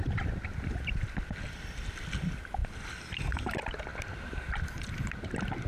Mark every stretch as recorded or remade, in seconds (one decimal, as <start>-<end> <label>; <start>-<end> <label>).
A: 0.0-2.6 recorded; 2.6-3.1 remade; 3.1-5.7 recorded

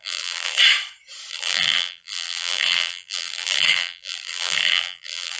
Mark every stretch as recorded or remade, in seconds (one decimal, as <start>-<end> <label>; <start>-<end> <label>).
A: 0.0-0.6 remade; 0.6-1.3 recorded; 1.3-5.4 remade

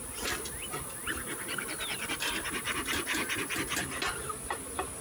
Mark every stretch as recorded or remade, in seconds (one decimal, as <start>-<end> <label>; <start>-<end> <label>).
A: 0.0-5.0 recorded

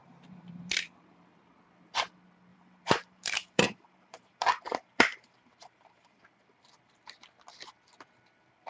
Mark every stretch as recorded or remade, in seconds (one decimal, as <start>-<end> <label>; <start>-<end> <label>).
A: 0.0-1.4 remade; 1.4-2.5 recorded; 2.5-6.2 remade; 6.2-8.7 recorded